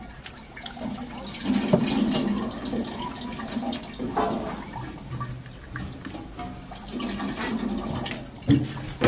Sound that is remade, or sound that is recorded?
recorded